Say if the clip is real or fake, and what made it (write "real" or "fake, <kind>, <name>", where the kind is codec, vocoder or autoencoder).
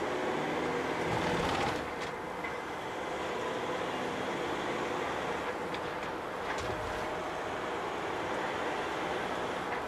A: real